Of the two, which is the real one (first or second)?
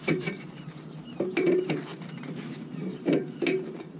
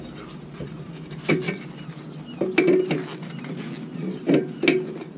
second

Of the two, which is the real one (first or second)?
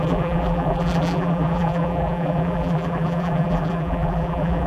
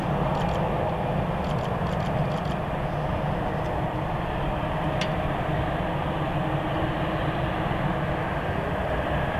second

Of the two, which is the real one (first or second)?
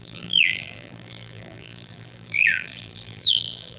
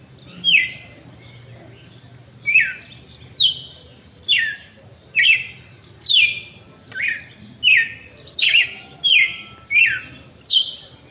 second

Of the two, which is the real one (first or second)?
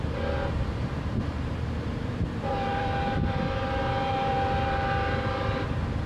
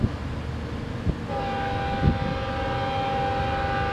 second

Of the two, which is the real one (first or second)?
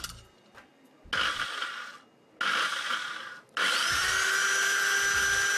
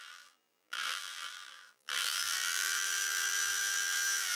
first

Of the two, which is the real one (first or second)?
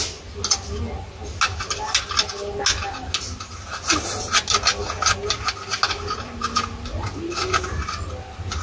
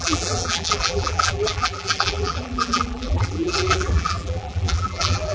first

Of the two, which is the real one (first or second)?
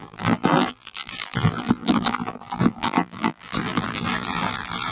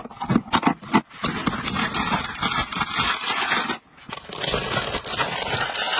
second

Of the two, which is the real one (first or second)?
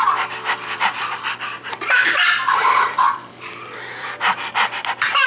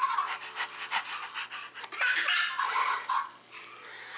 second